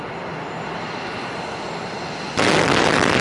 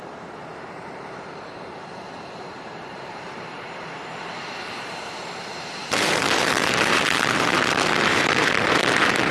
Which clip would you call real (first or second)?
first